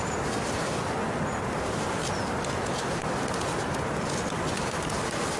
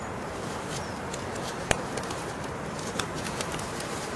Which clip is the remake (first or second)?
second